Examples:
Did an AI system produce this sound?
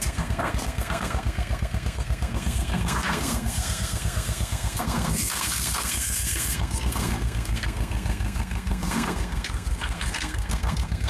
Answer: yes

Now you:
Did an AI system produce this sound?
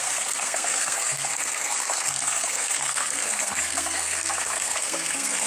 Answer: yes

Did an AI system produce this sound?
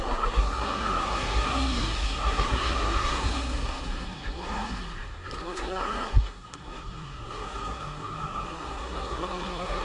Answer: yes